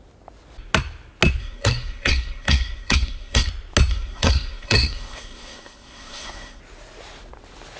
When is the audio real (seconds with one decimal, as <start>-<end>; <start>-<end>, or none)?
0.0-1.4; 3.5-3.9; 6.6-7.8